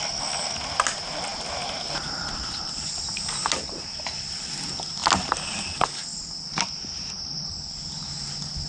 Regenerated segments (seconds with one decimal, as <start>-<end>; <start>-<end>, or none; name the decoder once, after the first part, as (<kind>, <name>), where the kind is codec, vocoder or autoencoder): none